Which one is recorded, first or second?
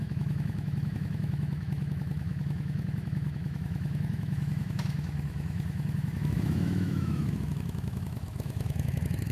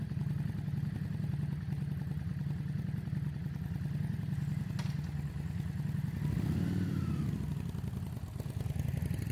second